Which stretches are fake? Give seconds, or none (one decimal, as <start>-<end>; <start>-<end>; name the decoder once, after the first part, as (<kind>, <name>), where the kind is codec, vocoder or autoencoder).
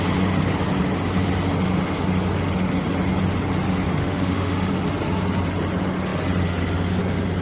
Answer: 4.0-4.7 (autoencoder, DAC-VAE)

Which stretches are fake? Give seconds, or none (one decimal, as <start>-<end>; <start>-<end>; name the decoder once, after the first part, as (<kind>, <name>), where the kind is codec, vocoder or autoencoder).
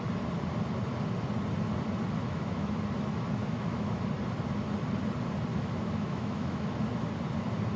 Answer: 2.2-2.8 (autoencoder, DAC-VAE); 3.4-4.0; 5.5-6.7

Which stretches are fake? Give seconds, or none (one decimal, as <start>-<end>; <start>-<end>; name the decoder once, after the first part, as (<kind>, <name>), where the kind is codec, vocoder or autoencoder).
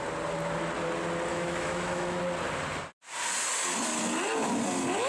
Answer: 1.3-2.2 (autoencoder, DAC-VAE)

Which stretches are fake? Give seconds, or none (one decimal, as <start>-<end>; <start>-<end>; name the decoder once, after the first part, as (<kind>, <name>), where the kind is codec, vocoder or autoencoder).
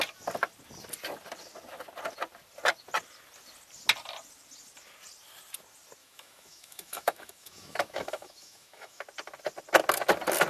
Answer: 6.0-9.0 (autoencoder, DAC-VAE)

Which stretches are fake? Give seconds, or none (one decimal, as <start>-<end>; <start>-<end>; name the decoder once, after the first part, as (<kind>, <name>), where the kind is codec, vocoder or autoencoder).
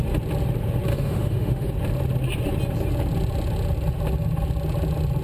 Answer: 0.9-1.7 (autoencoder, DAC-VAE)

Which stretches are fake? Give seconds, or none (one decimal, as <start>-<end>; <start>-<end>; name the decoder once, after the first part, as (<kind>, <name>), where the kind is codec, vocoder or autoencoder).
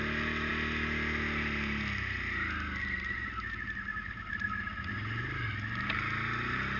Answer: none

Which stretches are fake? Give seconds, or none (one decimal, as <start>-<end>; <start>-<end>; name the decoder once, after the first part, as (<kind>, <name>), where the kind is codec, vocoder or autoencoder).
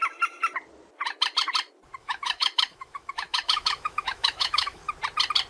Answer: 2.0-4.8 (autoencoder, DAC-VAE)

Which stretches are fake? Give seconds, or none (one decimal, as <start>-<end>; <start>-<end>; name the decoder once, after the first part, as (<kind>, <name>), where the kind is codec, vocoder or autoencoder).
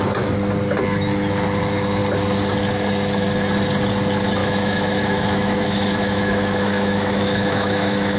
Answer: 4.4-8.2 (autoencoder, DAC-VAE)